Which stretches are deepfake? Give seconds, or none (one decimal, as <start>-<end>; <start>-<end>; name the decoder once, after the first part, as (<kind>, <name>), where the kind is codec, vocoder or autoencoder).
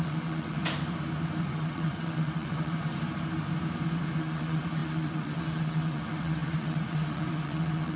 0.0-0.6 (vocoder, WaveNeXt); 1.5-2.9; 4.2-8.0